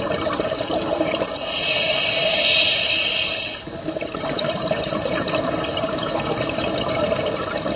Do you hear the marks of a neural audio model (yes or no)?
yes